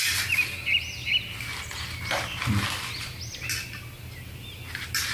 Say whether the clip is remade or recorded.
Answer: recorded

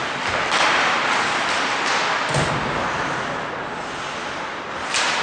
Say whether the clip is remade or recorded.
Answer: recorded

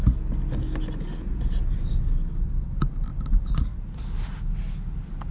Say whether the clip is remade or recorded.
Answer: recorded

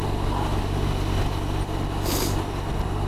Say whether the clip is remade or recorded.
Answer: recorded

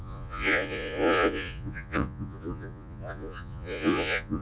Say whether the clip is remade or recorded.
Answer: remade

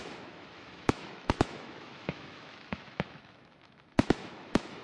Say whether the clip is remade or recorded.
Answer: remade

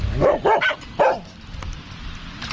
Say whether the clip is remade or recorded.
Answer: recorded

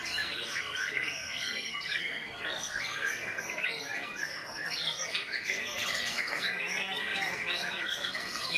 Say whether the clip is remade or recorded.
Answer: remade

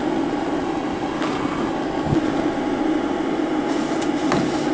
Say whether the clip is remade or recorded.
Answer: recorded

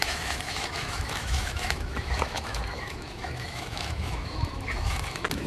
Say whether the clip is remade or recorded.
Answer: remade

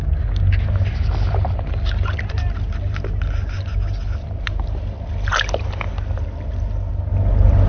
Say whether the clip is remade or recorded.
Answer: recorded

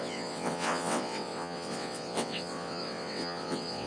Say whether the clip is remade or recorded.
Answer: remade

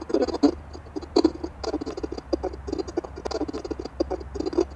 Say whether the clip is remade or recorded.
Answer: recorded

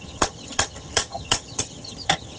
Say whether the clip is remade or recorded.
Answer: remade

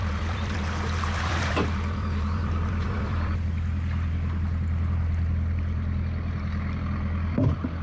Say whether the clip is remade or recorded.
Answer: remade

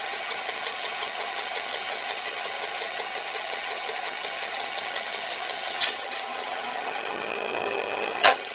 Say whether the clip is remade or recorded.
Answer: remade